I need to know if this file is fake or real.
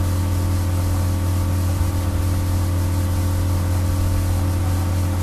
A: real